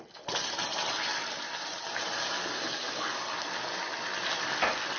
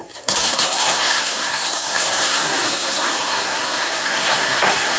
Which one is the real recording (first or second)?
first